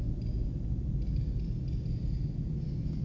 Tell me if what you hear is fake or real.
real